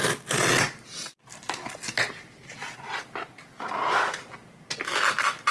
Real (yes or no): yes